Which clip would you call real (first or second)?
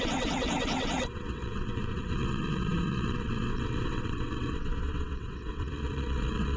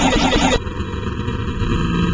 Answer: second